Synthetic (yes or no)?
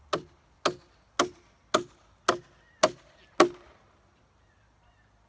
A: no